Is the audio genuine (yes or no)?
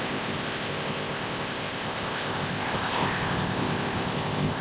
no